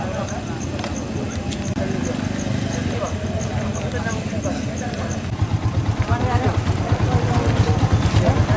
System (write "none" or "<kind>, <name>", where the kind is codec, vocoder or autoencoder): none